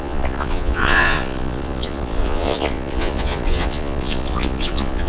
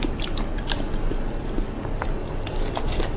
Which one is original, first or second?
second